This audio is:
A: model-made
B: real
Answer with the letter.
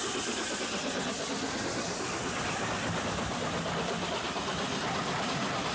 B